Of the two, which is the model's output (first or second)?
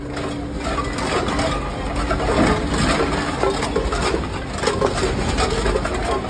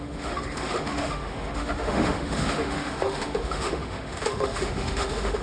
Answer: second